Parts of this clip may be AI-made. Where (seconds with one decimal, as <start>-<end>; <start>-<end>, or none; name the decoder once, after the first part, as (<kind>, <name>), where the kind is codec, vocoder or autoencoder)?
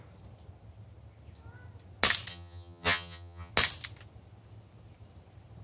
2.3-3.5 (vocoder, HiFi-GAN)